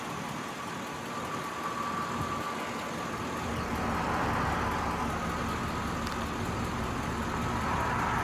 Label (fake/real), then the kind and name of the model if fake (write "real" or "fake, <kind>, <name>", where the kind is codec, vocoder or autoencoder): real